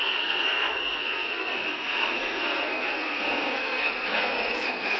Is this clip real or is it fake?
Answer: fake